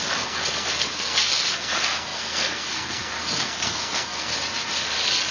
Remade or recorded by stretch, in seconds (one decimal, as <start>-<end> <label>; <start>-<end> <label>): 0.0-4.3 remade; 4.3-5.3 recorded